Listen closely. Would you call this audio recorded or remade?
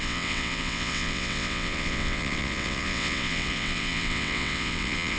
remade